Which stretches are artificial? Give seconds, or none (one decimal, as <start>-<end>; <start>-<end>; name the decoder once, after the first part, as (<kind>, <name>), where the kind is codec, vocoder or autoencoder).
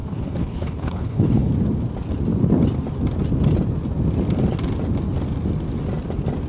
0.0-1.5 (codec, HILCodec)